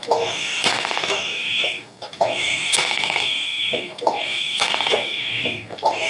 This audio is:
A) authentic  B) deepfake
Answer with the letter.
B